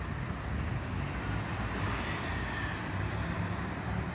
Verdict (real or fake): real